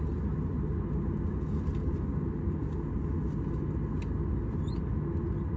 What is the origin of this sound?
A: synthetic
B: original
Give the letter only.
B